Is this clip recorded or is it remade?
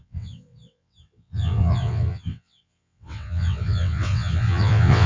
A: remade